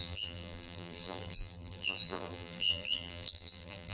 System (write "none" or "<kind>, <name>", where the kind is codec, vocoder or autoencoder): vocoder, BigVGAN v2